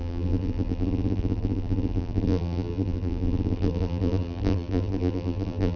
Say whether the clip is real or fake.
fake